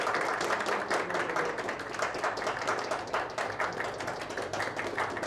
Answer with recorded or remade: recorded